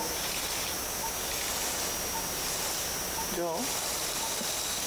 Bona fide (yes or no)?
yes